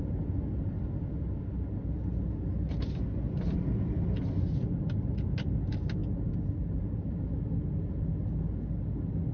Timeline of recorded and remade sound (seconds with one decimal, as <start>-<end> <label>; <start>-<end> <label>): 0.0-9.3 recorded